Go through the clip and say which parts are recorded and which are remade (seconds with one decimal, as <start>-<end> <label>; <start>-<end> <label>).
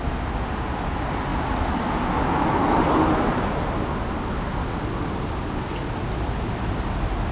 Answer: 0.0-7.3 recorded